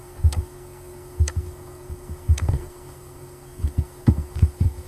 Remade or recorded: remade